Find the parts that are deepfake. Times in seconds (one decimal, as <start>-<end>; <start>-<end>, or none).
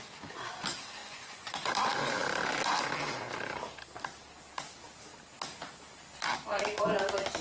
1.0-1.7